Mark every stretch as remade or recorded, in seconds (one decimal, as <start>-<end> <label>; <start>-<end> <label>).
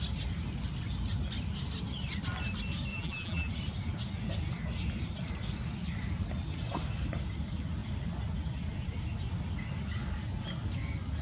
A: 0.0-2.9 recorded; 2.9-3.5 remade; 3.5-11.2 recorded